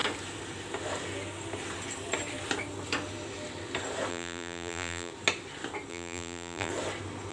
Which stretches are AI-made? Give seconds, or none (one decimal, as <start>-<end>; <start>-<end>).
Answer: 4.1-5.1; 5.9-6.7